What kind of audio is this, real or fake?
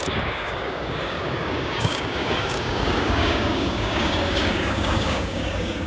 fake